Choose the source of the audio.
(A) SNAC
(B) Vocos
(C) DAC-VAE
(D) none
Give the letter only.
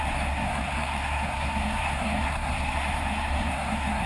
A